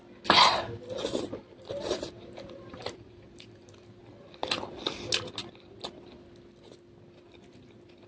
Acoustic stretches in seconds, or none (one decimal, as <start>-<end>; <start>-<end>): 0.0-1.4; 4.0-8.1